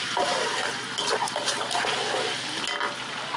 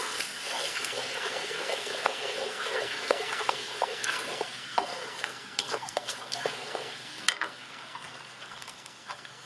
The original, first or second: first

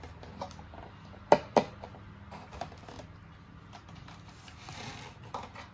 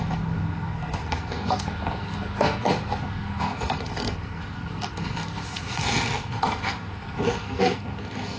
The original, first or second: first